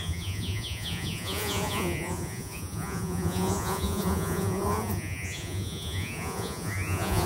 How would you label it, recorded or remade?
remade